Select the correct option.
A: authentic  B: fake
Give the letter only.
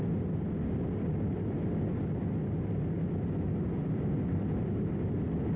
A